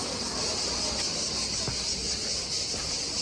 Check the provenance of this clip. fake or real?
real